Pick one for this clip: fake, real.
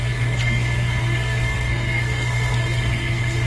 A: fake